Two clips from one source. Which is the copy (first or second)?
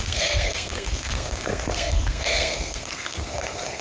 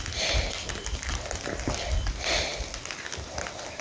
first